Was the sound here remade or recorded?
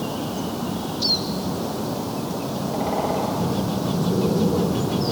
recorded